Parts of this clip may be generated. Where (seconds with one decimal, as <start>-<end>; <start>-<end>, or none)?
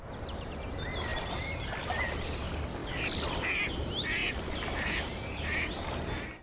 1.1-2.1; 2.8-3.4